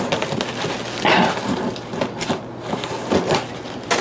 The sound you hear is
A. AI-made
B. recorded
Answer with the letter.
B